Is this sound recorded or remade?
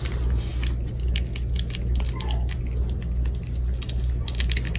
recorded